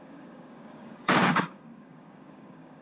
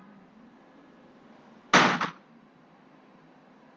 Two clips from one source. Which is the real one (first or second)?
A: second